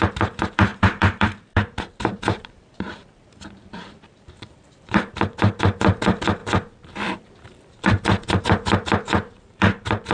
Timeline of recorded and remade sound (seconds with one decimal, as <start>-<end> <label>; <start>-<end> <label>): 0.0-6.4 remade; 6.4-8.4 recorded; 8.4-10.1 remade